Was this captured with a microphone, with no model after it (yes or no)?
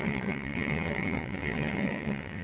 no